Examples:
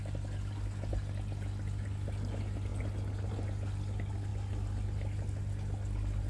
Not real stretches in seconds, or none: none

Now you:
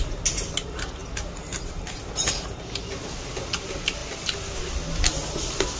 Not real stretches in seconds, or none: none

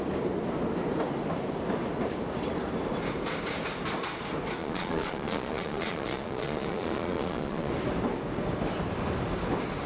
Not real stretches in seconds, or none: 4.6-7.7 (vocoder, Vocos)

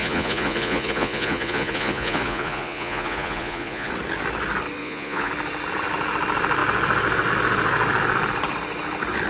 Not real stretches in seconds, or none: 0.0-3.9 (vocoder, Vocos); 4.8-5.3

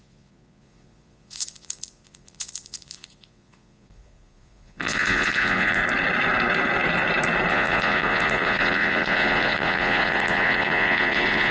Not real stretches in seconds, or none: 0.0-5.8 (vocoder, Vocos); 7.5-11.5